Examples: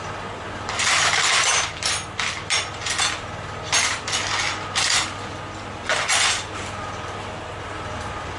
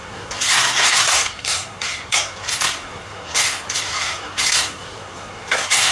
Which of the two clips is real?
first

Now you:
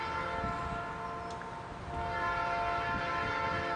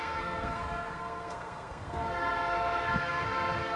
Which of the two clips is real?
first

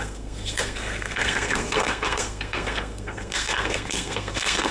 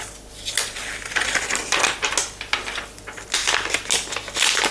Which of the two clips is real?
second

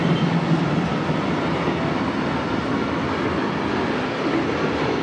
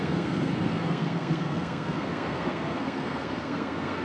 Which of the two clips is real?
first